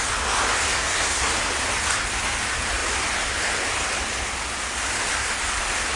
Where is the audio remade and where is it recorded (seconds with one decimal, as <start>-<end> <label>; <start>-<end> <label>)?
0.0-0.7 recorded; 0.7-1.3 remade; 1.3-6.0 recorded